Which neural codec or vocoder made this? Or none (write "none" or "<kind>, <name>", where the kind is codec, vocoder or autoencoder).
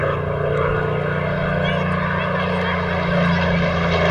none